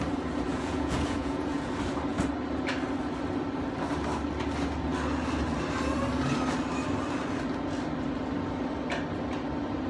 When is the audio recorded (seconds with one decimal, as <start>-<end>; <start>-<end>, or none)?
0.0-0.5; 1.7-9.9